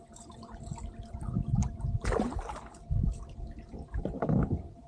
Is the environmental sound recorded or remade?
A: recorded